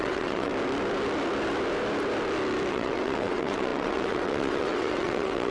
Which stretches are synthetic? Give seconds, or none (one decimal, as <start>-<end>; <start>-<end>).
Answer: 0.0-0.5; 2.7-5.5